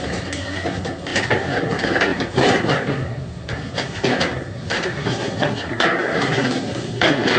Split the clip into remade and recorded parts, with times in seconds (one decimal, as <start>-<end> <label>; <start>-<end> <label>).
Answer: 0.0-7.4 remade